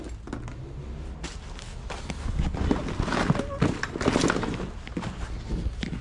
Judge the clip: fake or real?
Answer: real